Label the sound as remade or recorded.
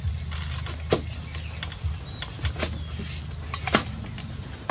recorded